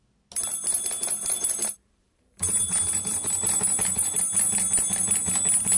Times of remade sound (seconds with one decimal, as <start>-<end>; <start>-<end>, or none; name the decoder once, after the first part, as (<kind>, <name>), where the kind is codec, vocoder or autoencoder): 0.7-4.2 (vocoder, BigVGAN v2)